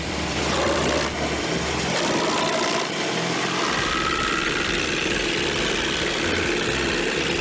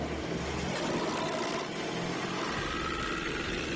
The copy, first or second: first